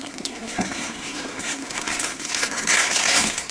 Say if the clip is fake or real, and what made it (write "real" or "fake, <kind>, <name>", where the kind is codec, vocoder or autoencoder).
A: fake, codec, SNAC